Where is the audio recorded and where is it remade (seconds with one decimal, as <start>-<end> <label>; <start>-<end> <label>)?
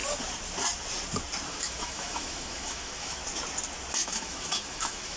0.0-1.5 recorded; 1.5-3.2 remade; 3.2-3.9 recorded; 3.9-5.2 remade